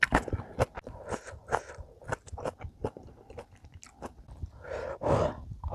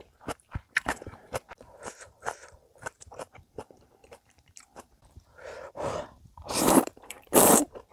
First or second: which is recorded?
first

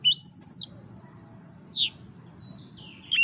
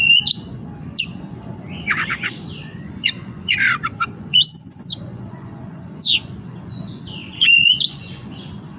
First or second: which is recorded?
first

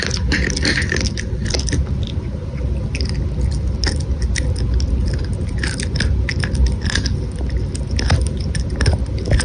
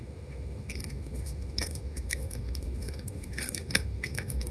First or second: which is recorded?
first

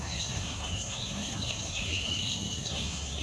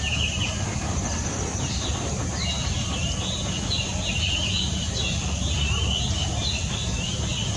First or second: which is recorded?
second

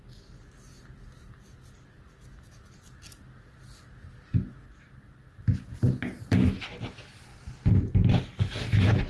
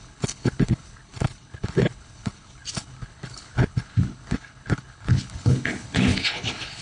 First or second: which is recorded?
first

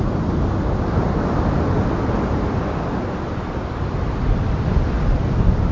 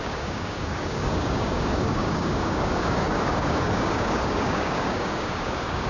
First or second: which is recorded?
first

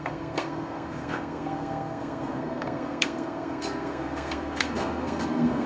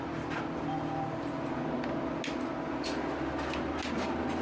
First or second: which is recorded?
second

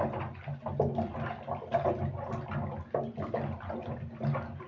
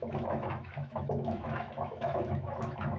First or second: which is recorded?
first